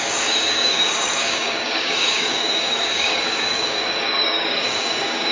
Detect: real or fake fake